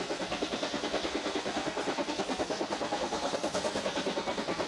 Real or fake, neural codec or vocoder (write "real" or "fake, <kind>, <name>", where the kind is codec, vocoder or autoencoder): fake, codec, SNAC